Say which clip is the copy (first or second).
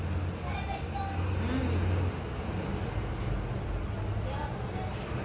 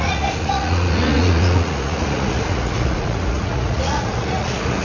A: second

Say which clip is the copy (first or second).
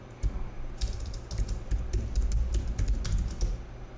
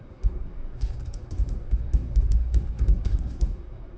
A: second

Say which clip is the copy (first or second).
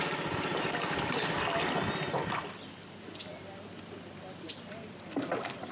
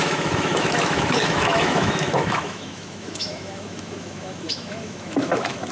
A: second